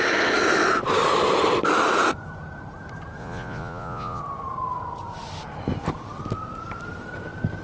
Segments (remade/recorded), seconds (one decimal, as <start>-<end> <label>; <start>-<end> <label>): 0.0-3.2 recorded; 3.2-4.2 remade; 4.2-7.6 recorded